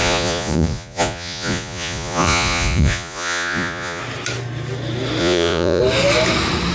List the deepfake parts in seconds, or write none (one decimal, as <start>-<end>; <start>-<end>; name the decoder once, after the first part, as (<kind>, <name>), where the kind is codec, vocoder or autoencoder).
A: 0.0-4.0 (vocoder, Vocos); 5.2-5.8